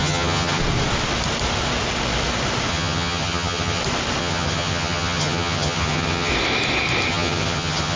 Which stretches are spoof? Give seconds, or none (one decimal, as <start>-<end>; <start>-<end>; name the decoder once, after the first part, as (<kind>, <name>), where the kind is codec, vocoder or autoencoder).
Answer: 0.0-0.6 (vocoder, HiFi-GAN); 2.7-3.8; 4.2-6.3; 7.1-8.0